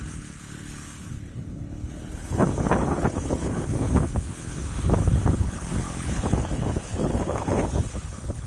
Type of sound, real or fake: fake